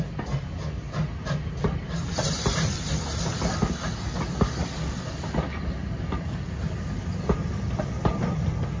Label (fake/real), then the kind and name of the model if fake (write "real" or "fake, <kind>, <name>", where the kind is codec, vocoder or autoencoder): real